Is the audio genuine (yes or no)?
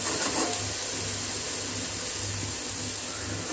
yes